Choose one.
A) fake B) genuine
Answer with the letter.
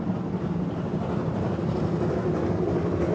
B